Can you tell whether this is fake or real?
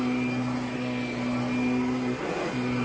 real